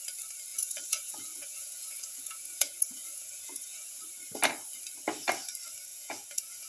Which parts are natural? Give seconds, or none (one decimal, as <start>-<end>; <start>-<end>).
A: 0.0-0.5; 4.0-5.9